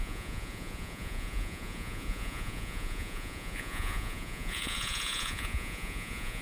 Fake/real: fake